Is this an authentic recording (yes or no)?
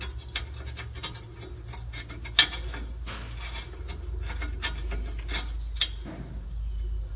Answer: yes